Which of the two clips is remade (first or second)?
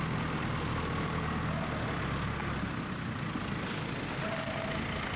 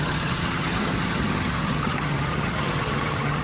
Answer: second